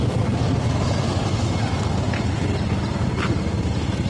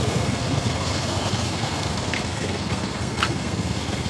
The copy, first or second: second